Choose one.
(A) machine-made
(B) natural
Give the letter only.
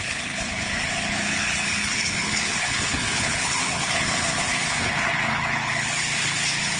A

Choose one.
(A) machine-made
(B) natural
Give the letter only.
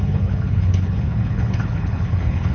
A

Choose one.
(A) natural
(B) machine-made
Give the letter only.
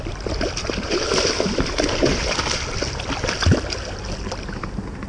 A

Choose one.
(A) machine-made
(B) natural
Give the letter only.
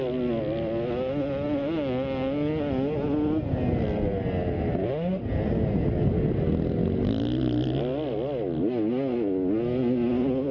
B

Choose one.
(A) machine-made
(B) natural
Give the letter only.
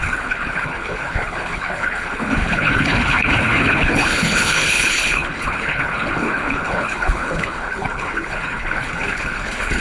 A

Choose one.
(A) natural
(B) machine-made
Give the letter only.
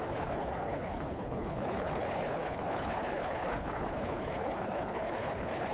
B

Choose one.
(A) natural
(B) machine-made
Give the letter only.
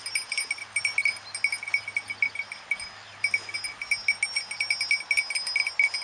A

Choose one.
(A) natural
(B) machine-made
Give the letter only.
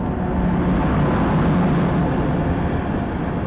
A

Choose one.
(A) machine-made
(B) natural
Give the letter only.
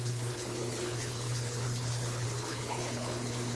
A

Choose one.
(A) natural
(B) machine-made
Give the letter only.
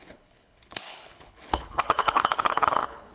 B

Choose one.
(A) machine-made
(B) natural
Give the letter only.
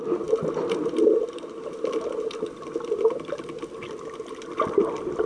B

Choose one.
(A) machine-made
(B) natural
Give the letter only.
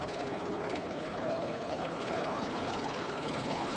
A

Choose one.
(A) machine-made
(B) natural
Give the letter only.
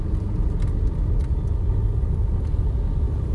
B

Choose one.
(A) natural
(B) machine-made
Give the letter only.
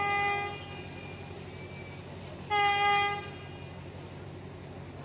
A